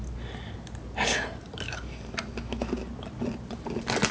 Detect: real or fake real